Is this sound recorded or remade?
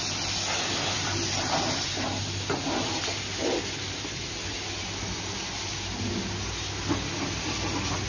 recorded